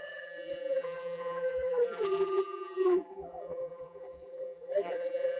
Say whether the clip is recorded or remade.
remade